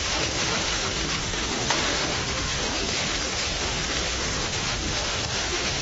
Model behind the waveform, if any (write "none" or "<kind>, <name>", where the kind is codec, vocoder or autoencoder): autoencoder, DAC-VAE